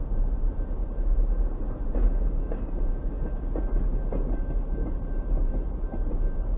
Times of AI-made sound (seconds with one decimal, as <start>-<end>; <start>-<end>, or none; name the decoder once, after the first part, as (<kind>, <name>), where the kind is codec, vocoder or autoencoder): 0.0-3.0 (vocoder, BigVGAN v2); 5.4-6.6